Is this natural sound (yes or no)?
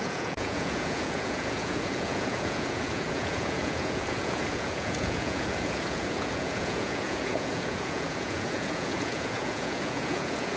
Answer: no